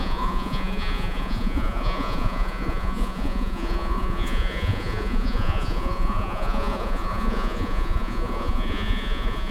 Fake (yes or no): yes